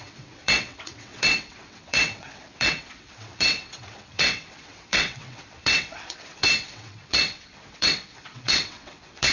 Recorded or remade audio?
remade